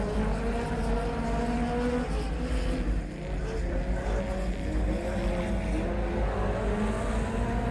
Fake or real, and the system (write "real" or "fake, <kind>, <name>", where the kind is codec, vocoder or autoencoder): real